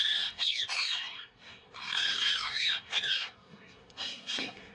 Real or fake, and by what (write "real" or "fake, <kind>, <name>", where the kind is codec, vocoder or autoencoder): fake, codec, SNAC